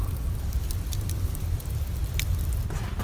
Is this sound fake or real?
real